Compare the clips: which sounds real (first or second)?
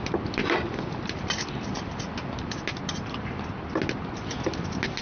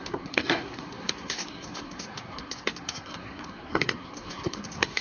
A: first